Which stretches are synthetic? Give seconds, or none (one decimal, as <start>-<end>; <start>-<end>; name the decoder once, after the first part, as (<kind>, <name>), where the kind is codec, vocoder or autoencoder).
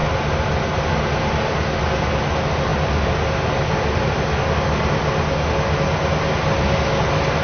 none